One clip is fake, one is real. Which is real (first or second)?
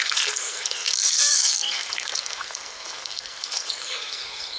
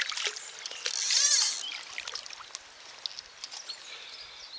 second